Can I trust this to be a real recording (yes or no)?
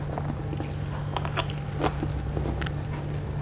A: yes